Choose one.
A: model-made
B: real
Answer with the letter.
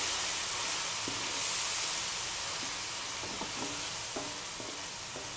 B